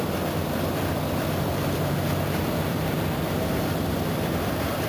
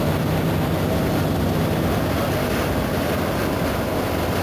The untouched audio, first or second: second